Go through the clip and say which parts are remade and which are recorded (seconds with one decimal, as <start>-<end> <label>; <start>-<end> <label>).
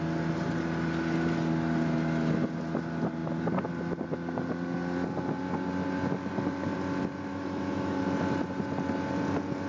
0.0-7.3 recorded; 7.3-8.0 remade; 8.0-9.7 recorded